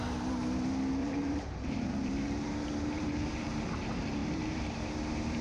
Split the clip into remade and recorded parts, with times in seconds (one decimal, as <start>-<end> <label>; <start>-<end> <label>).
0.0-1.0 recorded; 1.0-3.6 remade; 3.6-4.2 recorded; 4.2-5.4 remade